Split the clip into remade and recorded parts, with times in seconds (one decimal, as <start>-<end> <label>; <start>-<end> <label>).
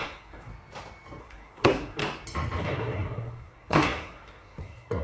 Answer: 0.0-0.5 remade; 0.5-1.2 recorded; 1.2-2.0 remade; 2.0-2.6 recorded; 2.6-5.0 remade